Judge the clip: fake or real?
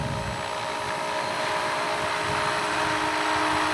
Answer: real